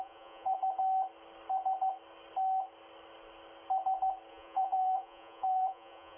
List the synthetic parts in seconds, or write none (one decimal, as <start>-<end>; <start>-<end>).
0.0-0.6; 4.3-6.2